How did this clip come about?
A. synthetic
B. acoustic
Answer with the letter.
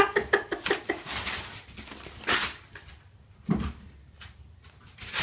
B